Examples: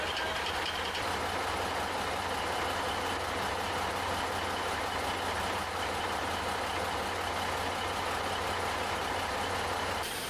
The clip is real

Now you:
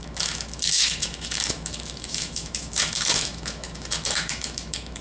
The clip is fake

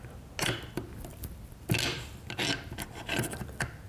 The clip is real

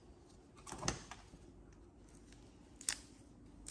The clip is real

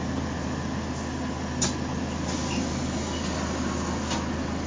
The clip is real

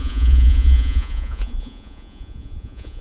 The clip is fake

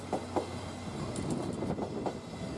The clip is real